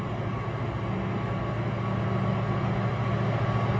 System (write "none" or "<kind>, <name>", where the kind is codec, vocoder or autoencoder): none